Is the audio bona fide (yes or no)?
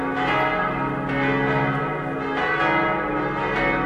yes